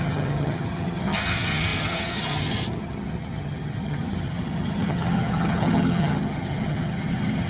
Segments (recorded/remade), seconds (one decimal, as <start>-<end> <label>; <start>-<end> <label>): 0.0-7.5 remade